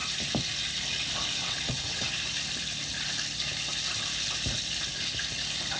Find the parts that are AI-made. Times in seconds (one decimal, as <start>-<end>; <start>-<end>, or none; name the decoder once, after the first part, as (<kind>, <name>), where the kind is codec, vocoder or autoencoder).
1.4-2.1 (vocoder, WaveNeXt)